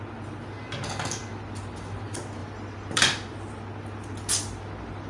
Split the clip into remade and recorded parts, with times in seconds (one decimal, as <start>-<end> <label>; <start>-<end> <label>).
0.0-2.4 recorded; 2.4-3.4 remade; 3.4-5.1 recorded

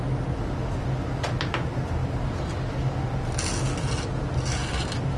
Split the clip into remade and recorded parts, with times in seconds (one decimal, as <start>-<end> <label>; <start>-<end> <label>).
0.0-4.6 recorded; 4.6-5.2 remade

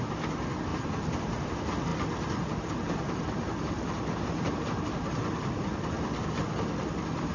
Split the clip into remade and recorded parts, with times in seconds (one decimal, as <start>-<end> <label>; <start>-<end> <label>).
0.0-0.7 recorded; 0.7-1.5 remade; 1.5-1.9 recorded; 1.9-6.3 remade; 6.3-7.3 recorded

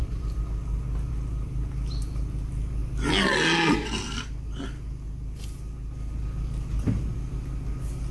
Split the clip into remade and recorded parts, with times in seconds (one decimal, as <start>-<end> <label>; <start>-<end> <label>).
0.0-8.1 recorded